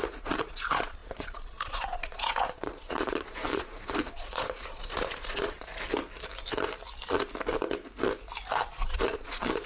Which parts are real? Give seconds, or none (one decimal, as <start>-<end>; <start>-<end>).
5.7-8.7

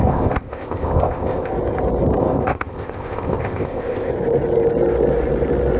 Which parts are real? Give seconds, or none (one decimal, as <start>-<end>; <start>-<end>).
1.5-2.2; 4.1-5.8

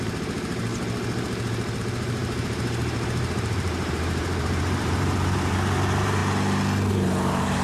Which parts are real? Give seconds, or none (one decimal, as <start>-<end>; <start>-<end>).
0.7-1.8; 6.2-6.9